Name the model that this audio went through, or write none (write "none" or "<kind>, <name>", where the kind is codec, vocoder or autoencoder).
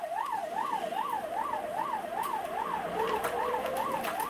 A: vocoder, BigVGAN v2